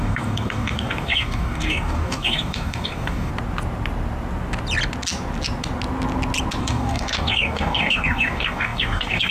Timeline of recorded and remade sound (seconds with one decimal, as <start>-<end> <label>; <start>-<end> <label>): 0.0-3.3 remade; 3.3-6.6 recorded; 6.6-9.3 remade